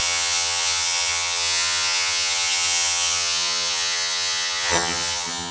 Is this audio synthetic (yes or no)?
yes